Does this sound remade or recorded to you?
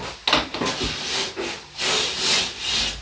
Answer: recorded